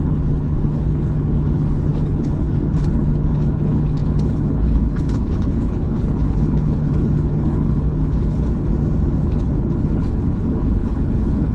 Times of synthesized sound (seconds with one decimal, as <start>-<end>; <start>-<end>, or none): 0.0-8.7; 9.2-11.5